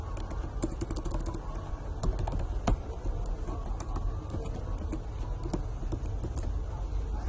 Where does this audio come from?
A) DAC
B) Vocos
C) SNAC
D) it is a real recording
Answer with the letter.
D